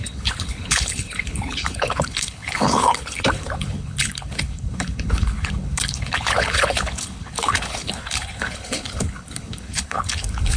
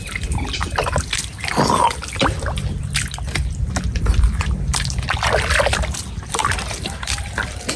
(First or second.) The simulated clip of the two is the first